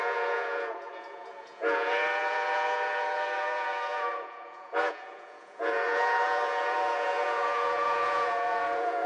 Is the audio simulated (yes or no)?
yes